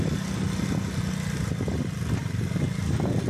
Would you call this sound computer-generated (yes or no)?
no